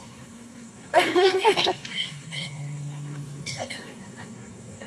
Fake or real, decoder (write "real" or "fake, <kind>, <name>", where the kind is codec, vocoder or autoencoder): fake, codec, SNAC